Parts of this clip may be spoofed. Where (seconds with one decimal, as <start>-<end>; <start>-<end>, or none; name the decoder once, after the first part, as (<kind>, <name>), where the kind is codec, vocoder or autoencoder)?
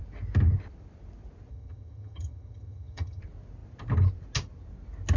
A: 1.5-3.2 (vocoder, HiFi-GAN)